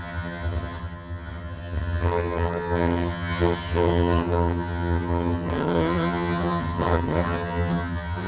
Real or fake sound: fake